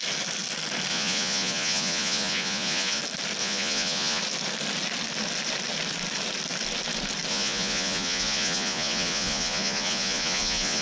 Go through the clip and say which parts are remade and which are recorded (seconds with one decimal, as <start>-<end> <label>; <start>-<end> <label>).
0.0-0.9 recorded; 0.9-3.0 remade; 3.0-3.4 recorded; 3.4-4.2 remade; 4.2-7.3 recorded; 7.3-10.8 remade